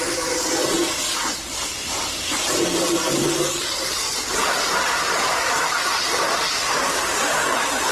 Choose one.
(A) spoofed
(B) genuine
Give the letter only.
A